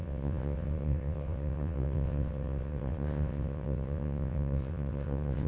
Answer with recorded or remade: remade